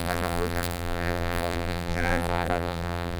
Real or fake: fake